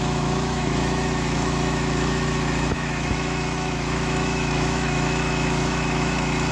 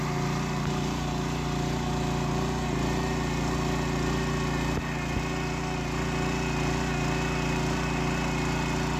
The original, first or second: second